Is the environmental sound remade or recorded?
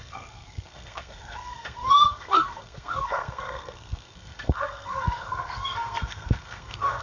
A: remade